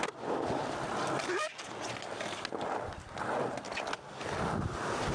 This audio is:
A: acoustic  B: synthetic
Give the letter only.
A